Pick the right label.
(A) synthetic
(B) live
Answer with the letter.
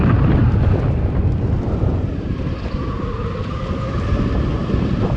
B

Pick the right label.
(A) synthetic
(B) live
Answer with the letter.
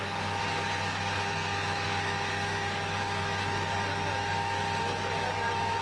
A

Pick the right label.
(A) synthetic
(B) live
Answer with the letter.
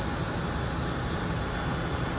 B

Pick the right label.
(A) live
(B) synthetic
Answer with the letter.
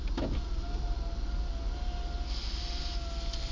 A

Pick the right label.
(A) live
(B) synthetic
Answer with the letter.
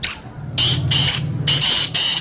A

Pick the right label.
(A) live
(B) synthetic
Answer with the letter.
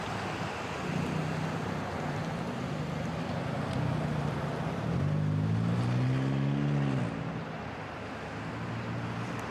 A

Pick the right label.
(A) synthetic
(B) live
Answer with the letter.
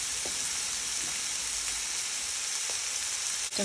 B